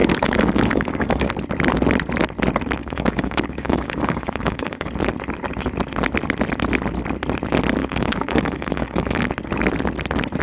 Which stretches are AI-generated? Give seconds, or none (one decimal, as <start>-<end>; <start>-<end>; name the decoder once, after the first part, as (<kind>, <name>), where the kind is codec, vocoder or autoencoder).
0.0-1.3 (codec, DAC); 2.8-4.9; 7.8-9.3